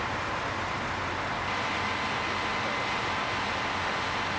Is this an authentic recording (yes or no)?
yes